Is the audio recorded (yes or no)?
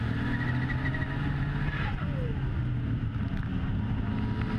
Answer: yes